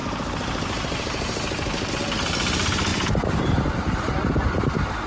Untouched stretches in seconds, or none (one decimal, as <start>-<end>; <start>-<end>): 1.9-2.9; 4.4-5.1